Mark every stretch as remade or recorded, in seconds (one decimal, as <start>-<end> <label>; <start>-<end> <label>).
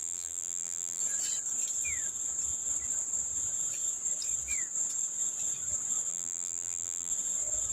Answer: 0.0-1.0 remade; 1.0-6.1 recorded; 6.1-7.1 remade; 7.1-7.7 recorded